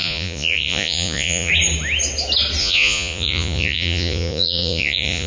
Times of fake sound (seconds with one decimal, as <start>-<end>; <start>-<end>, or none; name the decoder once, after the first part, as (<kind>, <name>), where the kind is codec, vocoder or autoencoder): 0.0-1.5 (vocoder, Vocos); 2.6-5.3